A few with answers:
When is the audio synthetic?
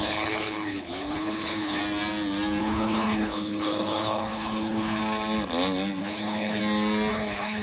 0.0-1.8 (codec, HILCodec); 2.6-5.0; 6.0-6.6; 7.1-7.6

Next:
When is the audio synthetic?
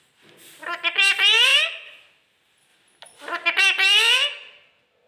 none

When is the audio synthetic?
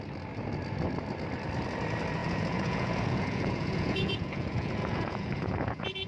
2.2-6.1 (vocoder, Vocos)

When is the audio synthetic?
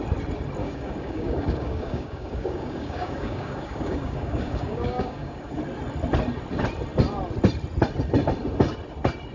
0.6-5.6 (codec, DAC)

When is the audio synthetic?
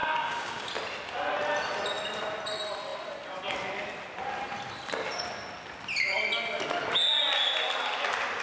0.0-0.7 (codec, DAC)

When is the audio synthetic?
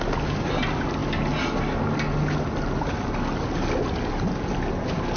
none